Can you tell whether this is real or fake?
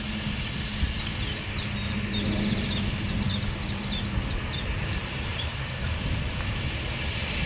real